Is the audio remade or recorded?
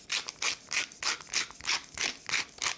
recorded